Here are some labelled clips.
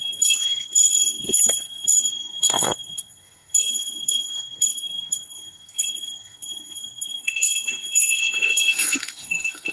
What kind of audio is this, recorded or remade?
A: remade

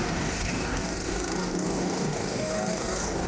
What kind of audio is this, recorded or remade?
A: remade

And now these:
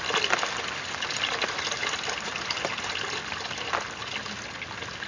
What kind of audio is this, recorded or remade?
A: recorded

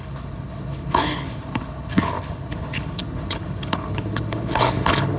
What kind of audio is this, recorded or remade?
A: remade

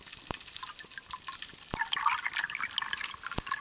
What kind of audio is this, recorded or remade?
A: recorded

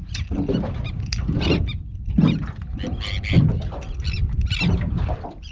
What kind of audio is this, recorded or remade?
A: recorded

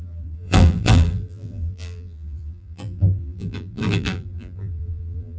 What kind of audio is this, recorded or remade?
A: remade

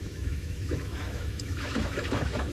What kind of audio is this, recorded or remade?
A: remade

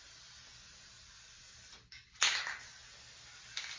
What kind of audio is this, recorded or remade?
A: recorded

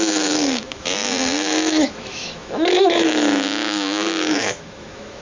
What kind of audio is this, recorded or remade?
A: remade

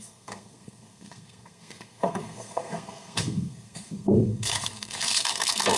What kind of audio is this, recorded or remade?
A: remade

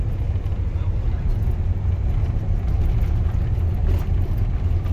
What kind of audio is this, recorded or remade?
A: recorded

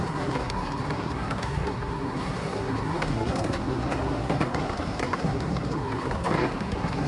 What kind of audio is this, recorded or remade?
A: remade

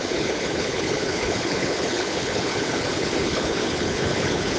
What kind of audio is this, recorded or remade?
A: remade